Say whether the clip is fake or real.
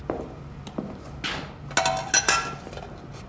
real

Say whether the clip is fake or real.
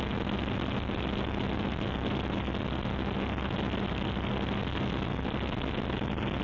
real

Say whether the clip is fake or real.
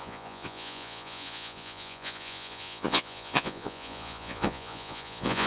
fake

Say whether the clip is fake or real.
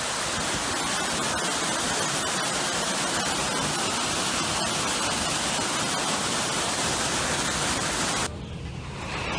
real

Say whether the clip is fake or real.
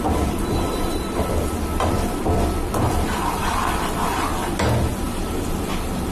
real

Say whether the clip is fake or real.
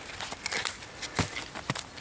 real